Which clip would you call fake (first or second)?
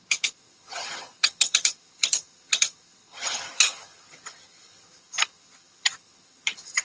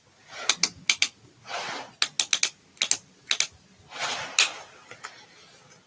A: first